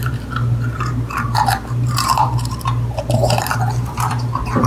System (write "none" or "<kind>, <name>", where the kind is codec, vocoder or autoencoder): vocoder, BigVGAN v2